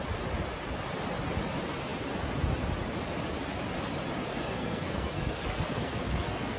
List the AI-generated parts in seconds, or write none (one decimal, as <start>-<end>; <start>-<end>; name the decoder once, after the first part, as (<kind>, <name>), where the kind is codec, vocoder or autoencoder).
4.3-6.6 (codec, SNAC)